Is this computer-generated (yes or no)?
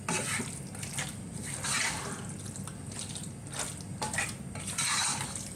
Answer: no